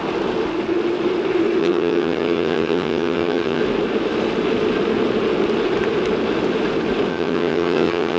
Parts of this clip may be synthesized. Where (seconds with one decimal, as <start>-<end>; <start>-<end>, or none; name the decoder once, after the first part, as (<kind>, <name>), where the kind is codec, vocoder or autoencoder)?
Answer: 1.6-3.6 (vocoder, HiFi-GAN); 7.1-8.2